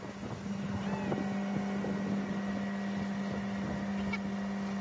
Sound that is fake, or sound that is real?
real